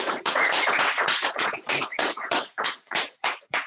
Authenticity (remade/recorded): remade